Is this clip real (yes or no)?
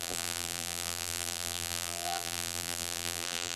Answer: no